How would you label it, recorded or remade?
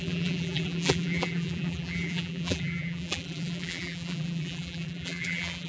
remade